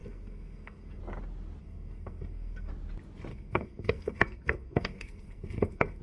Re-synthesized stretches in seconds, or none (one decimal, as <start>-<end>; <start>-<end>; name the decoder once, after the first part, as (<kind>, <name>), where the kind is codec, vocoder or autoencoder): 0.0-1.0 (codec, SNAC); 1.6-2.7; 3.3-6.0